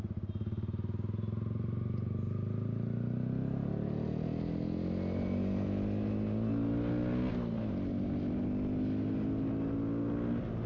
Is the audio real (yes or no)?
yes